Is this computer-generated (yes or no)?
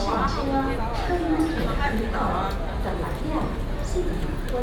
no